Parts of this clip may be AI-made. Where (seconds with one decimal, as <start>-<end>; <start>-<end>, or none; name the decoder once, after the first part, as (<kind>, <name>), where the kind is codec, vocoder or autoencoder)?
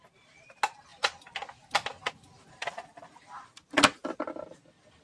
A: none